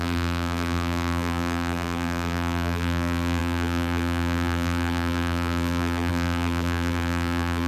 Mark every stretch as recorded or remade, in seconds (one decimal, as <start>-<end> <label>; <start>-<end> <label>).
0.0-7.7 remade